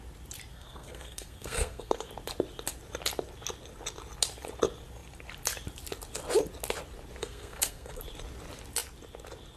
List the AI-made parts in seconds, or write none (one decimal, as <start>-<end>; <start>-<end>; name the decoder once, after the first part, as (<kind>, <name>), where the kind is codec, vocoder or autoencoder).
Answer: 0.5-2.1 (codec, SNAC); 7.2-8.0